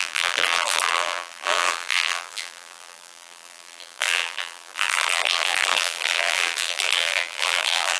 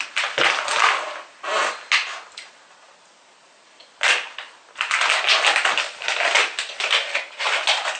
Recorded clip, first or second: second